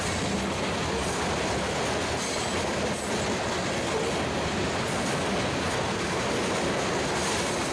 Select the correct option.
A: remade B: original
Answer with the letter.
B